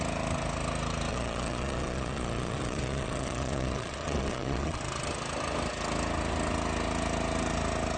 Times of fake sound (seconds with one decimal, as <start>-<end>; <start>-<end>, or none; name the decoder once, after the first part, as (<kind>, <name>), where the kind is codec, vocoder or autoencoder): 1.1-4.8 (vocoder, Vocos)